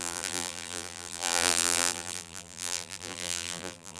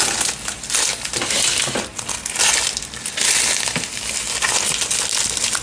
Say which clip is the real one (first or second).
second